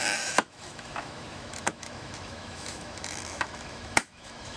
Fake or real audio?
fake